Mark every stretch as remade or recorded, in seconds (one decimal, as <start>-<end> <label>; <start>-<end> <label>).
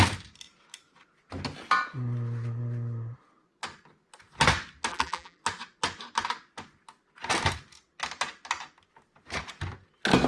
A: 0.0-4.9 recorded; 4.9-5.4 remade; 5.4-10.3 recorded